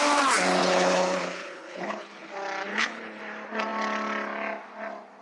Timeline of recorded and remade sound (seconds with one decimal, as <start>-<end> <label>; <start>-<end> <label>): 0.0-0.6 recorded; 0.6-2.3 remade; 2.3-2.7 recorded; 2.7-3.2 remade; 3.2-5.2 recorded